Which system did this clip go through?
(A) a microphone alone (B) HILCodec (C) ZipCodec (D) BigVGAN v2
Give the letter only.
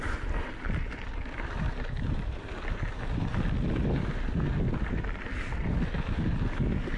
D